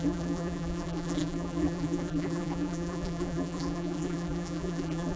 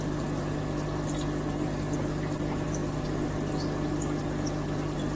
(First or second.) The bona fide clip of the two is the second